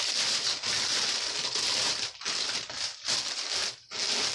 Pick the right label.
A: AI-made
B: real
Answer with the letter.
A